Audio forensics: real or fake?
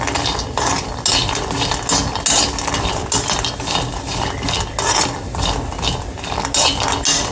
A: real